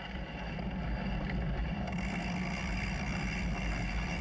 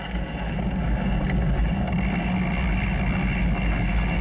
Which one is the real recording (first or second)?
second